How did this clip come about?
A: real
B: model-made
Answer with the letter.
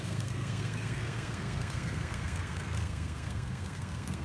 B